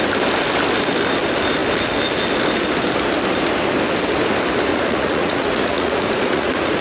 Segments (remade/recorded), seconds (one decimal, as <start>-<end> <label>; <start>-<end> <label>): 0.0-4.7 recorded; 4.7-6.8 remade